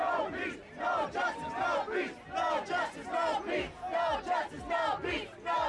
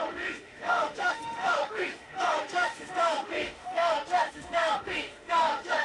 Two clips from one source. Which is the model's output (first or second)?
second